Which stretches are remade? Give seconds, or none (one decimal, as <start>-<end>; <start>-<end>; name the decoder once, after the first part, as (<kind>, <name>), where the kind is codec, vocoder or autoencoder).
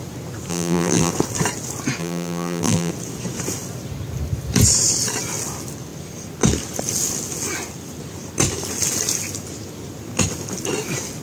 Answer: 0.5-1.1 (vocoder, BigVGAN v2); 2.0-2.9